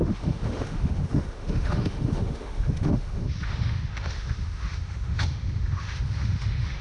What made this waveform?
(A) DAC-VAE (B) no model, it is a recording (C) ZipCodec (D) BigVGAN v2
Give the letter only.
A